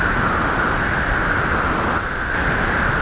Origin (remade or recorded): recorded